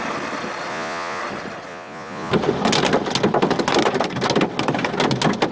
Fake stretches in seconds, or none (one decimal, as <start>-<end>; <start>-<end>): 0.7-1.2; 1.7-2.3